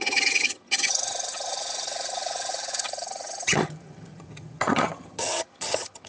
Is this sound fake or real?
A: fake